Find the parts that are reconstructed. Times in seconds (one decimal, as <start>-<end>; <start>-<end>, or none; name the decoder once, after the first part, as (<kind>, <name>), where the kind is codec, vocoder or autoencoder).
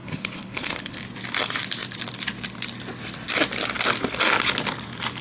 0.0-1.0 (codec, HILCodec)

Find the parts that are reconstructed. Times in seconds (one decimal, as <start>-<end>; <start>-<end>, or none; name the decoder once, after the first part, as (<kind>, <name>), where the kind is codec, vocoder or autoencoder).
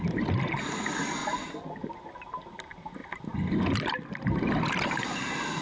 none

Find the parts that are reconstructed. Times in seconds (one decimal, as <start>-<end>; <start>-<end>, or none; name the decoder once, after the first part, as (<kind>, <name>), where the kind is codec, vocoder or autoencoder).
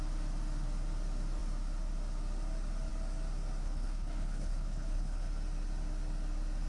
3.6-5.3 (codec, HILCodec)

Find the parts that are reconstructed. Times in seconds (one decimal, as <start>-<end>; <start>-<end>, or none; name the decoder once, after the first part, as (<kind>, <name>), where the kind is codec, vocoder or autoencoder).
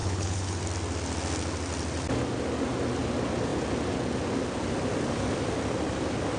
0.0-0.6 (codec, HILCodec)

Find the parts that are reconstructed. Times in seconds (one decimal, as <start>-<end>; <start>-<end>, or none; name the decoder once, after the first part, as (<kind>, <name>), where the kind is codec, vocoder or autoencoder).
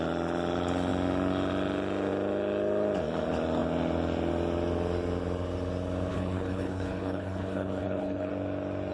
6.1-8.3 (codec, HILCodec)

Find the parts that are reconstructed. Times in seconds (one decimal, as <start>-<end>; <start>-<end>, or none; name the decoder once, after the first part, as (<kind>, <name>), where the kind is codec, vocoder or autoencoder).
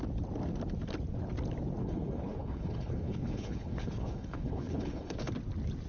1.8-5.3 (codec, HILCodec)